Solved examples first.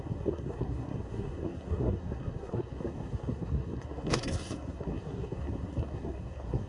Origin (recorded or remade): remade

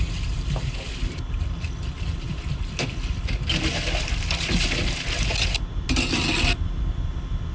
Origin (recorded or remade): recorded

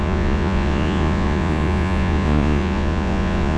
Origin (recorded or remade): remade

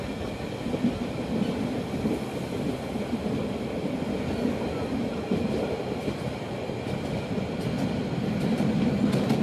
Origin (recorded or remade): recorded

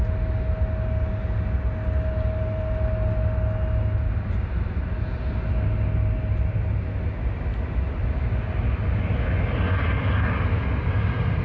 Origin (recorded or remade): recorded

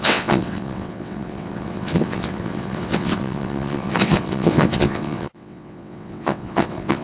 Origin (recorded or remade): remade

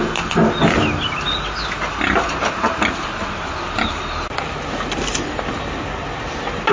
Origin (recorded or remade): recorded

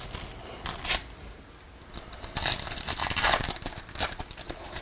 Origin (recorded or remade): recorded